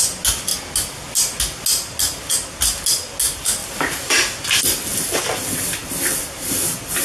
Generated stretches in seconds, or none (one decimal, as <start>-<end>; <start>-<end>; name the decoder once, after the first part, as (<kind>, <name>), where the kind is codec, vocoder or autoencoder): none